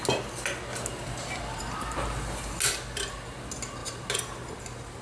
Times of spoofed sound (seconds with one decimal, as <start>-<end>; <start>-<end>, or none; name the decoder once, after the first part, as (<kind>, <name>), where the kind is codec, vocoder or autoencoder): none